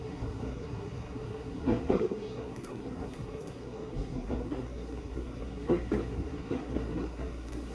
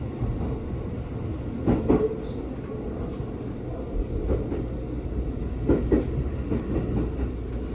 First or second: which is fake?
first